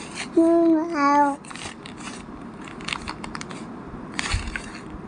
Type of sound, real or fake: real